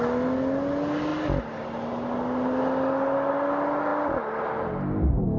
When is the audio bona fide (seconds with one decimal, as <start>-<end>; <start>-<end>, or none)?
0.0-5.4